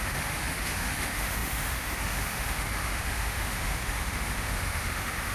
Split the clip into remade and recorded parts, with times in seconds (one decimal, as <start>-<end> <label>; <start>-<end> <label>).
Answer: 0.0-5.3 remade